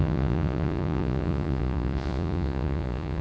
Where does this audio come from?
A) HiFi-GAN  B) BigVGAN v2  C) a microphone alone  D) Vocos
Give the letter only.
D